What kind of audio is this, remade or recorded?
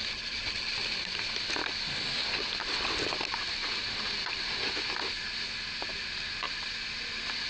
recorded